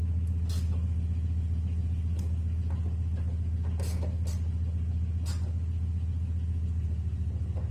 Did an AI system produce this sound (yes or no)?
no